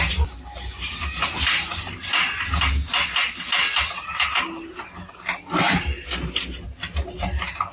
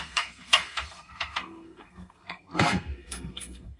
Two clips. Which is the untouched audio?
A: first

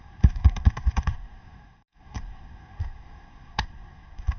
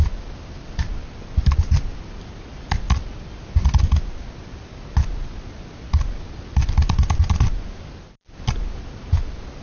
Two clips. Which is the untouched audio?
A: second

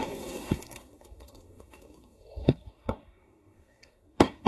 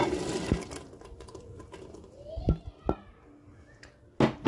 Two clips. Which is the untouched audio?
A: second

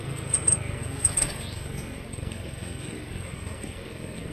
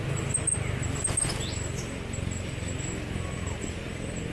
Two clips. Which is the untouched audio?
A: second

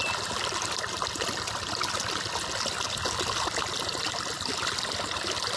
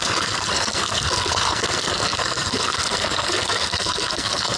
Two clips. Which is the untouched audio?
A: first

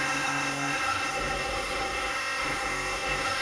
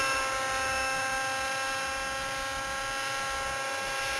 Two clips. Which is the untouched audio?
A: second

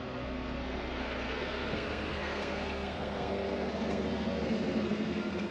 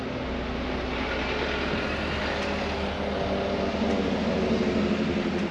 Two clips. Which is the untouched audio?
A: second